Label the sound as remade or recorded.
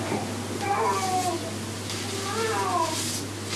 recorded